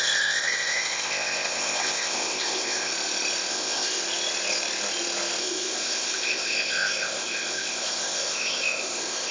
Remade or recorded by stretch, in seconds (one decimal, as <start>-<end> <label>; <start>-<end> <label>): 0.0-2.9 remade; 2.9-3.5 recorded; 3.5-4.0 remade; 4.0-5.4 recorded; 5.4-9.3 remade